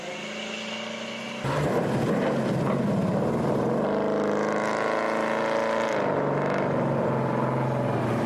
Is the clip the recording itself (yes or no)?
yes